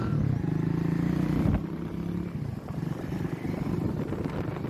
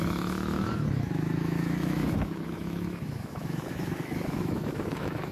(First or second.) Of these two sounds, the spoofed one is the second